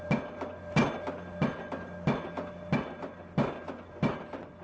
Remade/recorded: recorded